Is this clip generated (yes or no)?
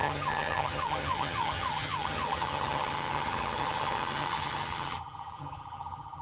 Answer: yes